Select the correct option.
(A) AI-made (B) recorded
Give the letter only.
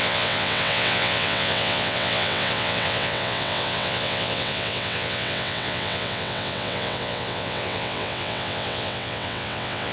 A